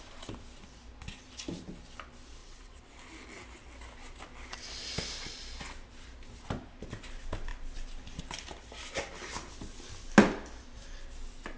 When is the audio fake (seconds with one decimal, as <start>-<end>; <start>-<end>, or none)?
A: 2.4-2.9